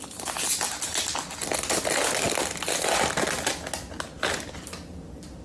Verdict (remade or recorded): recorded